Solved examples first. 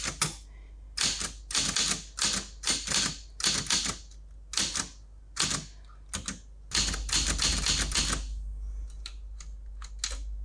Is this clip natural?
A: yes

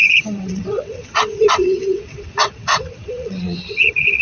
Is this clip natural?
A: no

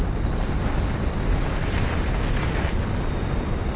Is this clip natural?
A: yes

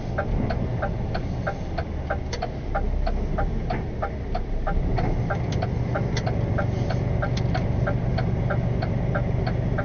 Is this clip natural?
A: yes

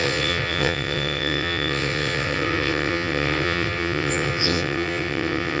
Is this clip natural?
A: no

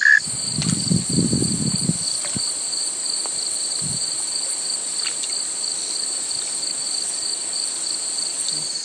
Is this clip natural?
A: yes